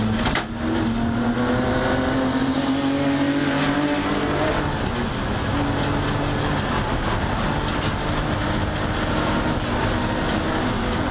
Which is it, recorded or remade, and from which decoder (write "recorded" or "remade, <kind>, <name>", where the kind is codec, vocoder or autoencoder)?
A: recorded